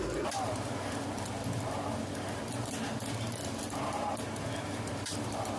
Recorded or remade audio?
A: remade